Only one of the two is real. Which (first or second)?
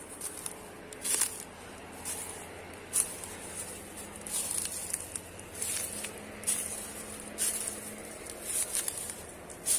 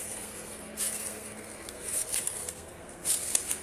first